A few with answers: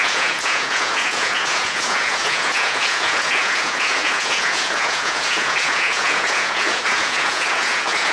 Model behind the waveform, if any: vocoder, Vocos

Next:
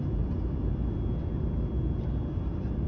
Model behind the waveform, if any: none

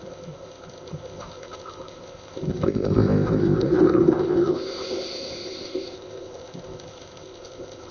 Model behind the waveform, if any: codec, ZipCodec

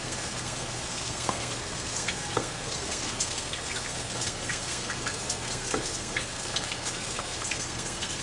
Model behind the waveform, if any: codec, SNAC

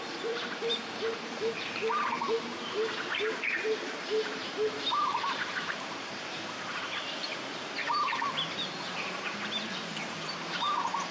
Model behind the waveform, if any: vocoder, BigVGAN v2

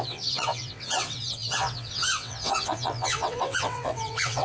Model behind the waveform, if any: vocoder, WaveNeXt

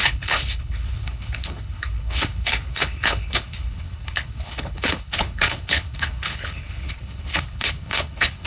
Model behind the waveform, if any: codec, HILCodec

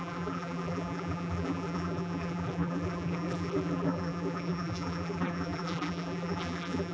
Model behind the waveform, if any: vocoder, BigVGAN v2